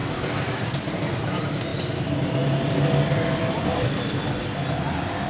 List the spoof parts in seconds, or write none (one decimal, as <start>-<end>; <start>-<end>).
none